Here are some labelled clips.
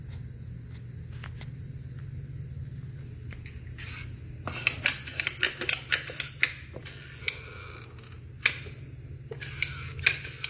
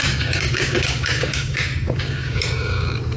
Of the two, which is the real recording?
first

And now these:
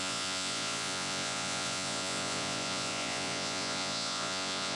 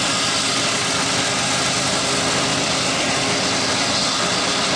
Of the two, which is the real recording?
second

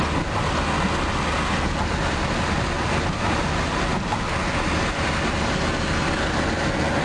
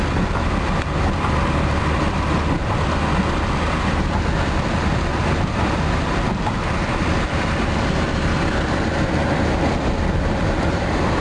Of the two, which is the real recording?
first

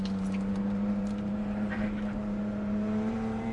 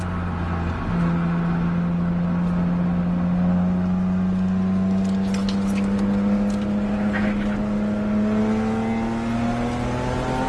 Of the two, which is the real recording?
second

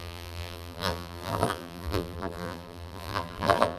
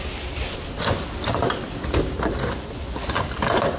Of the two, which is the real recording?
second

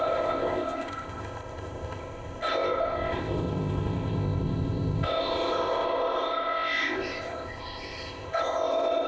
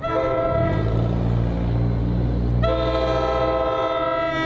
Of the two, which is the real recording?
second